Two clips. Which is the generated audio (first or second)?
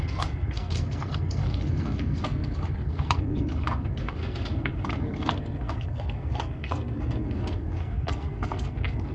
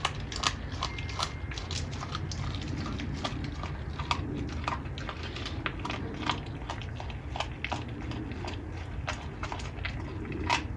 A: first